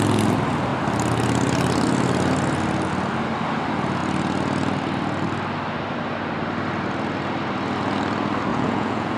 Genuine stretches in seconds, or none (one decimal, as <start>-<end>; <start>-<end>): 0.0-8.5

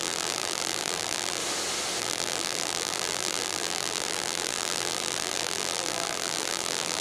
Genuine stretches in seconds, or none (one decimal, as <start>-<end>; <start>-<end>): 1.4-2.0